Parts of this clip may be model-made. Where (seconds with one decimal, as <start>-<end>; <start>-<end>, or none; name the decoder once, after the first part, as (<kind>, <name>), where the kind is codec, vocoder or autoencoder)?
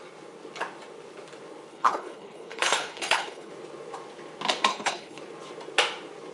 1.7-3.5 (codec, HILCodec); 4.7-5.2